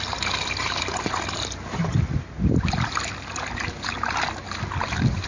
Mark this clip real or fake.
real